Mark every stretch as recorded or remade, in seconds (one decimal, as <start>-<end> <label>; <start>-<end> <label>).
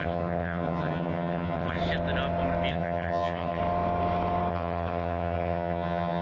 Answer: 0.0-1.8 remade; 1.8-2.7 recorded; 2.7-3.6 remade; 3.6-4.5 recorded; 4.5-6.2 remade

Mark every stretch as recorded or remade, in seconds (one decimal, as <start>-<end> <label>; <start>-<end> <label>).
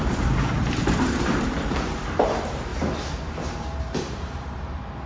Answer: 0.0-2.7 remade; 2.7-3.8 recorded; 3.8-5.1 remade